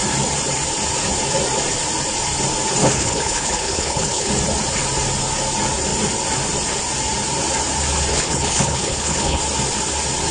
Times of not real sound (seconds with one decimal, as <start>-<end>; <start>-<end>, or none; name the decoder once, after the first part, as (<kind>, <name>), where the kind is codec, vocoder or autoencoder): 2.8-4.3 (codec, HILCodec); 8.1-9.4